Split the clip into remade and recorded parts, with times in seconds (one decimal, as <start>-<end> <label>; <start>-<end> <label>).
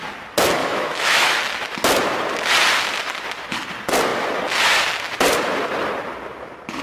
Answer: 0.0-0.6 recorded; 0.6-1.4 remade; 1.4-6.8 recorded